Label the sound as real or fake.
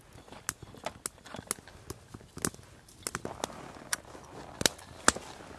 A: real